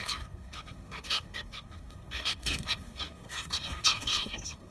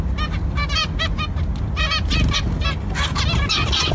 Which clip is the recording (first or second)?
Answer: second